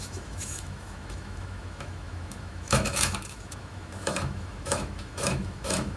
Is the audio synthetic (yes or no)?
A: yes